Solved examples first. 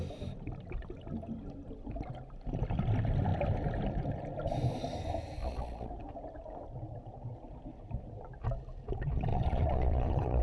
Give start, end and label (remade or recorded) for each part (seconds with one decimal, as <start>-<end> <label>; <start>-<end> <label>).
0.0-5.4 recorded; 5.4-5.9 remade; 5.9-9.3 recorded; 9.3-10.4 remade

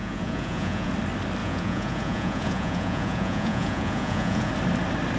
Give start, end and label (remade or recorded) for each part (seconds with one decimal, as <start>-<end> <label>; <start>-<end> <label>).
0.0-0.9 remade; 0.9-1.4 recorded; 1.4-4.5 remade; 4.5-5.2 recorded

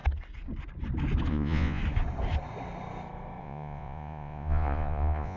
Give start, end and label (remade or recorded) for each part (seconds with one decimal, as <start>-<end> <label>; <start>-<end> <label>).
0.0-1.3 recorded; 1.3-1.8 remade; 1.8-3.4 recorded; 3.4-5.4 remade